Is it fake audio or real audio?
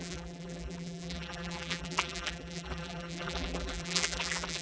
fake